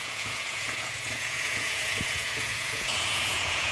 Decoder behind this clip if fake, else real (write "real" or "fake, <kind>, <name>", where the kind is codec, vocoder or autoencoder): fake, vocoder, Vocos